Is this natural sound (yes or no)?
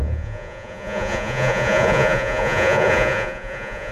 no